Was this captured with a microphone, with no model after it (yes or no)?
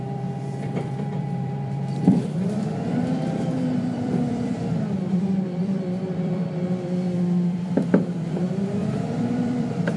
no